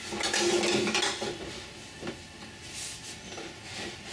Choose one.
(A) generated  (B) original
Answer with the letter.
B